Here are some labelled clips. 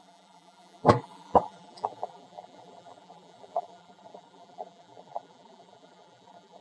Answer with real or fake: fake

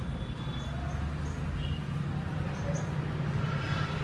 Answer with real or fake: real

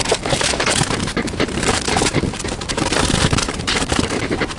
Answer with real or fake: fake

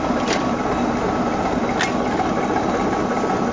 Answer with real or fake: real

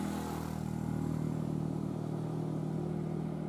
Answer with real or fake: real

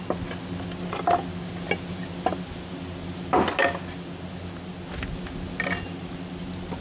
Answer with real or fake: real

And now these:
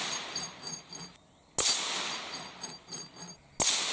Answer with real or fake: real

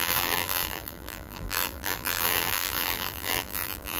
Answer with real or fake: fake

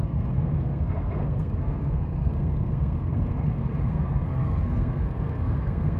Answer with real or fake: fake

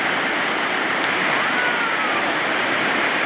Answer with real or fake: real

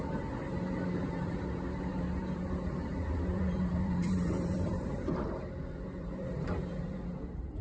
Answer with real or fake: fake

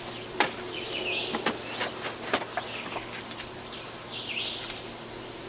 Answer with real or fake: real